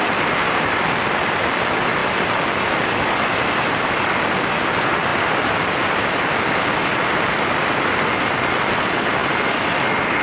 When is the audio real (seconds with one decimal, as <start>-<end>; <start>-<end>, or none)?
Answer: 0.0-10.2